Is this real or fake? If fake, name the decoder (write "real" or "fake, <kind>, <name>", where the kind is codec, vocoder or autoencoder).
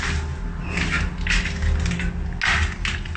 real